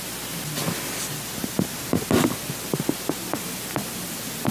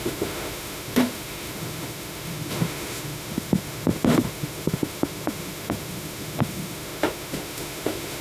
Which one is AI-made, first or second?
second